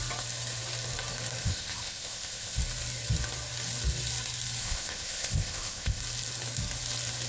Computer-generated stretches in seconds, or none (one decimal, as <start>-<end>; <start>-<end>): 1.4-2.6; 4.6-6.0

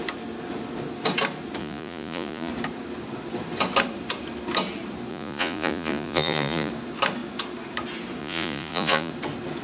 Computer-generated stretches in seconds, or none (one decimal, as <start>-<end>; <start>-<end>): 1.6-2.5; 5.1-6.7; 8.2-9.1

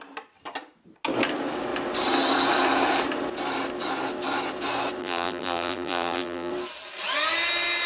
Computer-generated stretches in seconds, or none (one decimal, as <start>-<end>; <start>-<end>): 5.0-6.5

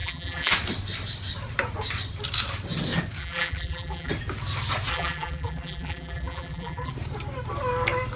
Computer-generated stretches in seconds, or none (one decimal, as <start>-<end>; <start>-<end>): 0.0-0.5; 3.2-4.1; 4.9-6.9

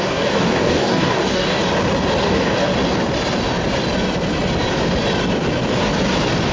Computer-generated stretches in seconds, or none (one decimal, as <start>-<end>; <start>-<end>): 0.0-1.6; 2.2-2.7

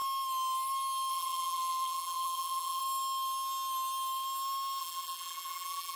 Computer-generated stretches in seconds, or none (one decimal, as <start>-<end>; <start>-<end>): 1.1-2.8; 4.8-6.0

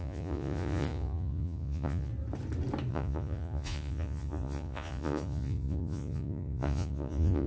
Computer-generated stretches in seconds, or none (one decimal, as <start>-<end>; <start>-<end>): 0.0-2.1; 2.9-7.5

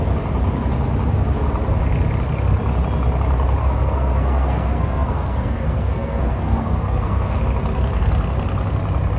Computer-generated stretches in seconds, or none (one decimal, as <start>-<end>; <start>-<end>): 3.6-7.4